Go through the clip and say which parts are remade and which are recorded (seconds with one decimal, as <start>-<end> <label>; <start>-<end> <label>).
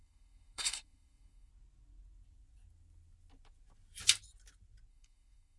0.0-1.5 remade; 1.5-4.9 recorded; 4.9-5.6 remade